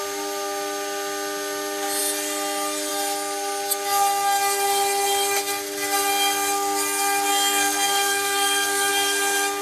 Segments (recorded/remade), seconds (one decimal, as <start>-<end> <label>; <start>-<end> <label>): 0.0-7.3 recorded; 7.3-8.9 remade; 8.9-9.6 recorded